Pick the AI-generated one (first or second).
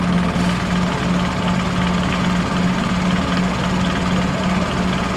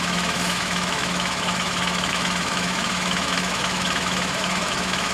second